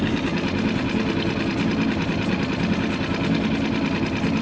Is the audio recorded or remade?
recorded